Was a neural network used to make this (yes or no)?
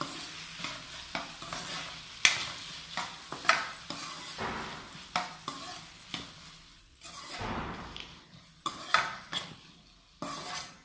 no